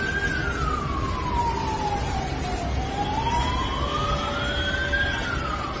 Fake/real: real